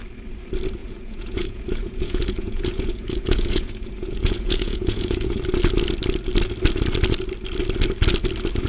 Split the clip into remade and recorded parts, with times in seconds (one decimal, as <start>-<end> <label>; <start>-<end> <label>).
0.0-0.8 recorded; 0.8-5.4 remade; 5.4-8.7 recorded